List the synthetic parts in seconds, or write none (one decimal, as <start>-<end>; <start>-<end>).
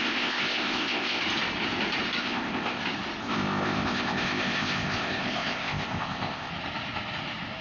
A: 0.0-1.2; 2.2-2.8; 3.2-6.5